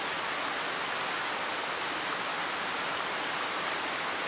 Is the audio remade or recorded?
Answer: recorded